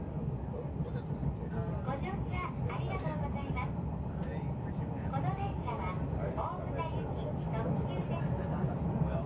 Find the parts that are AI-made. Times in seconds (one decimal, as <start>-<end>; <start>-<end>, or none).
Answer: none